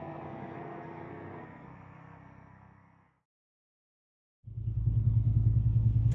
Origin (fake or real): fake